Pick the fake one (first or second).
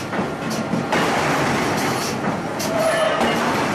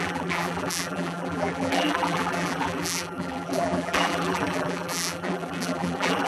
second